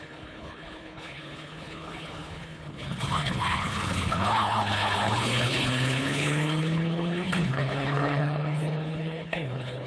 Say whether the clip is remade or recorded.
remade